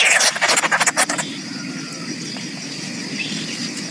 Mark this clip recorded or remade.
recorded